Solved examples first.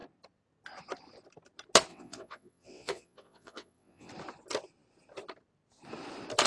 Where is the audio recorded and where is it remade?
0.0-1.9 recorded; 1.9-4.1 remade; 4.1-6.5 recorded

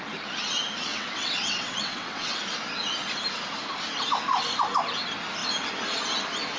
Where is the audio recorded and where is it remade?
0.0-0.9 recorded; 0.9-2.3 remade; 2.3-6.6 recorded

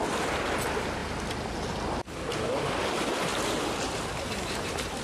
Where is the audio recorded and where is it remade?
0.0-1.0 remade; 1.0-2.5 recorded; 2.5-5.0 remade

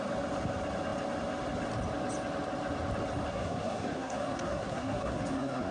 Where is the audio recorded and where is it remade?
0.0-3.3 recorded; 3.3-5.7 remade

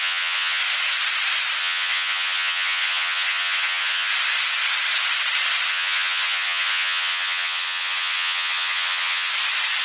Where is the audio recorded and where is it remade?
0.0-0.6 remade; 0.6-1.6 recorded; 1.6-4.1 remade; 4.1-5.7 recorded; 5.7-9.3 remade; 9.3-9.8 recorded